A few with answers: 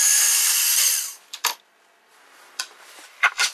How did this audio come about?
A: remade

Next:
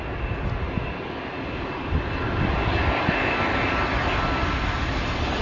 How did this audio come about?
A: recorded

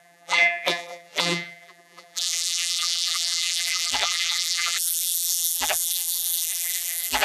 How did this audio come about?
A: remade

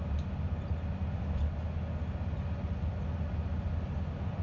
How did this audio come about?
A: recorded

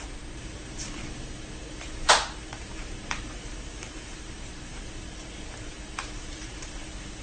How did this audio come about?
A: remade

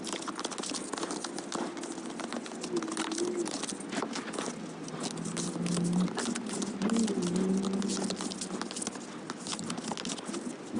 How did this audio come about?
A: recorded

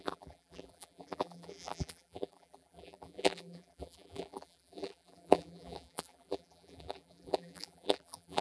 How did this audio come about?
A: remade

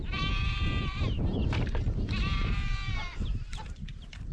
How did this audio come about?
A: remade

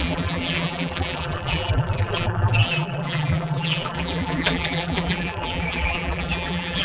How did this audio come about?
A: remade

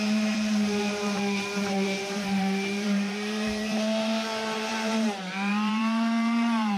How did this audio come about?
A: remade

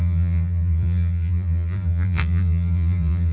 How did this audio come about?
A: remade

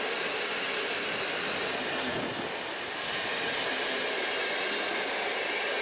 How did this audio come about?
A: recorded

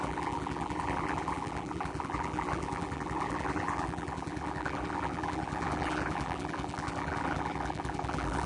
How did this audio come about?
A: remade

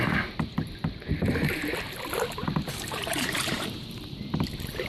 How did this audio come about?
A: remade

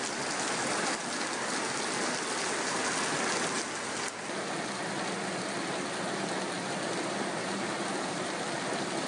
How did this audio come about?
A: recorded